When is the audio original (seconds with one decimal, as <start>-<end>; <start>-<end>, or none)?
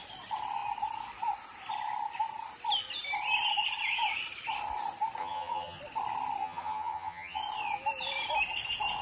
0.0-5.2; 5.8-6.4; 7.4-9.0